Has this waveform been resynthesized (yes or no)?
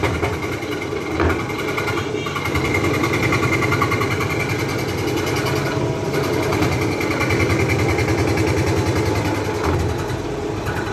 no